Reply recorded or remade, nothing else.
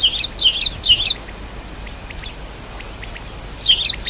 recorded